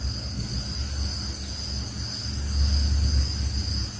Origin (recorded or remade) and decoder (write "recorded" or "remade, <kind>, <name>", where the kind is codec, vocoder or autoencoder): recorded